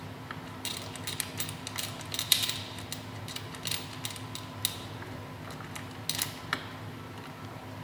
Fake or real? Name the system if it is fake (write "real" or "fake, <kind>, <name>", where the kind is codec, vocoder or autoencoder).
real